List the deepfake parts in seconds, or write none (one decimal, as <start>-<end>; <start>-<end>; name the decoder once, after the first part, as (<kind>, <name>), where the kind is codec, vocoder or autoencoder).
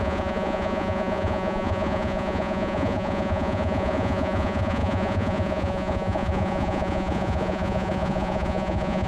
0.0-9.1 (vocoder, Vocos)